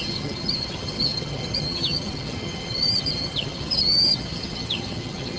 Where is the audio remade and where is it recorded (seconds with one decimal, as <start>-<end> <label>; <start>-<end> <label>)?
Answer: 0.0-5.4 remade